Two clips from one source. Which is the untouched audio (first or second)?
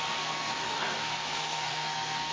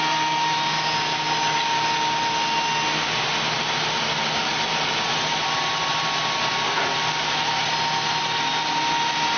second